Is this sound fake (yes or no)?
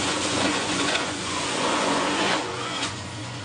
yes